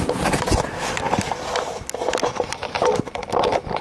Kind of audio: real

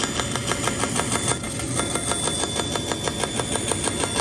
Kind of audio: real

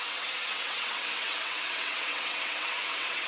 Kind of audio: fake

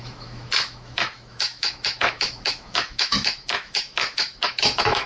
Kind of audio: fake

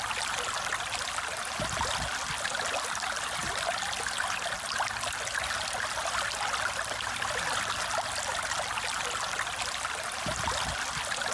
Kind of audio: real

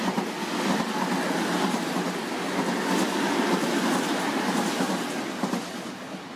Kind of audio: real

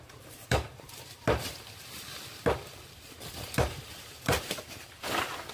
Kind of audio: fake